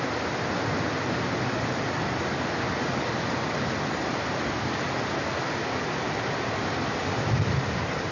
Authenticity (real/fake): real